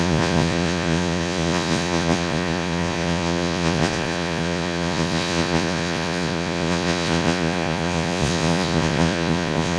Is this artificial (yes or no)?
yes